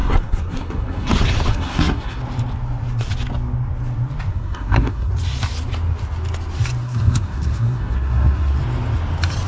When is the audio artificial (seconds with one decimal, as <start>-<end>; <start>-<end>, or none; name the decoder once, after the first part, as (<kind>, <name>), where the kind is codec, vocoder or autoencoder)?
0.0-1.1 (codec, SNAC); 1.5-2.2; 4.3-5.1; 6.8-8.6